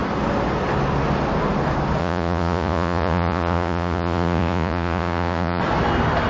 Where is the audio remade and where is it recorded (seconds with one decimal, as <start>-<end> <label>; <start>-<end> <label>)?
0.0-2.0 recorded; 2.0-5.6 remade; 5.6-6.3 recorded

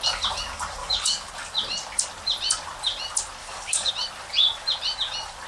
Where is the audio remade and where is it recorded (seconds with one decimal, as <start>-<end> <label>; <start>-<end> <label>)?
0.0-0.8 recorded; 0.8-1.3 remade; 1.3-3.4 recorded; 3.4-3.9 remade; 3.9-5.5 recorded

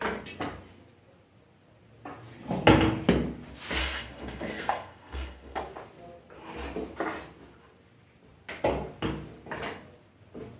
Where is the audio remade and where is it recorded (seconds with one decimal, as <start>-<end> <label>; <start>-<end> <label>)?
0.0-3.8 recorded; 3.8-5.6 remade; 5.6-10.6 recorded

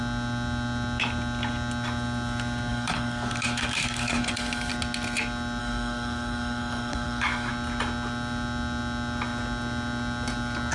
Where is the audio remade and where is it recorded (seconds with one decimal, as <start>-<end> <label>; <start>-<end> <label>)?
0.0-2.7 recorded; 2.7-4.7 remade; 4.7-5.6 recorded; 5.6-7.5 remade; 7.5-10.7 recorded

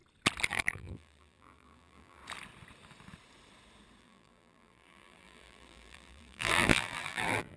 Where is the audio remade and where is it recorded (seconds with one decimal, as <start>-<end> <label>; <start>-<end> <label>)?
0.0-0.5 recorded; 0.5-2.2 remade; 2.2-4.0 recorded; 4.0-7.6 remade

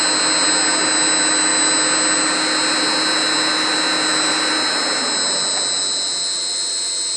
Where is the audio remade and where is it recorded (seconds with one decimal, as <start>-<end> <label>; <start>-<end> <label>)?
0.0-7.2 recorded

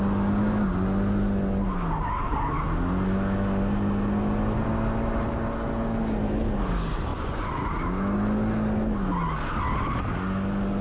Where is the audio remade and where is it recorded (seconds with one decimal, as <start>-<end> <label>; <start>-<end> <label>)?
0.0-7.1 recorded; 7.1-7.7 remade; 7.7-10.8 recorded

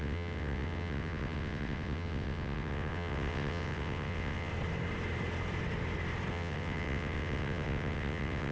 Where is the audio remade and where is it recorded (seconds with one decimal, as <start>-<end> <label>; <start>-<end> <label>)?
0.0-4.5 remade; 4.5-6.3 recorded; 6.3-8.5 remade